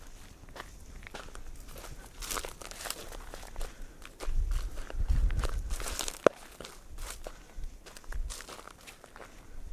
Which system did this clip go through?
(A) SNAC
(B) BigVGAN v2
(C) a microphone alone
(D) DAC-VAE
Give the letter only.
C